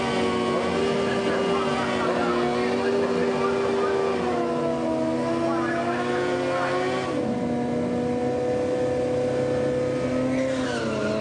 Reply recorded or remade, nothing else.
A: recorded